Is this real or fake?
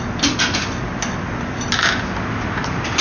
real